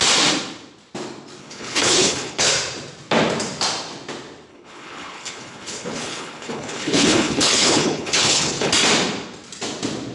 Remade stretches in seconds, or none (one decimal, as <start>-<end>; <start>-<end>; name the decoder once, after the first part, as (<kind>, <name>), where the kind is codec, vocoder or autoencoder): 1.4-2.5 (codec, HILCodec); 4.5-8.7